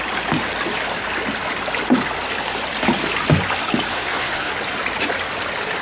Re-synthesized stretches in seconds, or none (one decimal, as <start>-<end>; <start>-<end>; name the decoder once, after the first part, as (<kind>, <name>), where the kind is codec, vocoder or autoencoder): 3.9-4.5 (codec, SNAC)